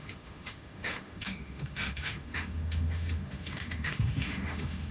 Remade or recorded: remade